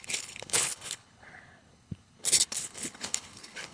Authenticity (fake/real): fake